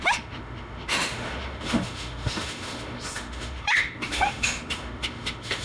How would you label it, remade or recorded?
remade